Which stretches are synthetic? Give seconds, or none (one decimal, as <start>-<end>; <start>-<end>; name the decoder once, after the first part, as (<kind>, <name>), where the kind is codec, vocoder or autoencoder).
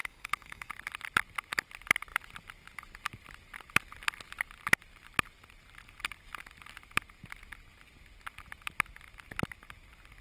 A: 0.0-0.7 (autoencoder, DAC-VAE)